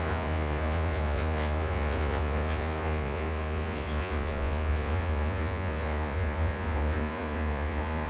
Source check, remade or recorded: remade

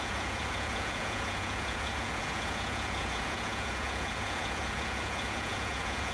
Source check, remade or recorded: remade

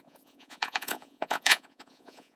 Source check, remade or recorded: remade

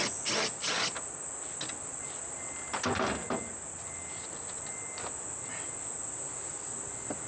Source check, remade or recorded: recorded